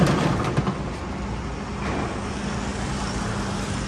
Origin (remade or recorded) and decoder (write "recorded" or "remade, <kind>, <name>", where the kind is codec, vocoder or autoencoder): recorded